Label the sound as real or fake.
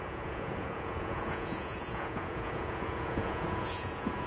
fake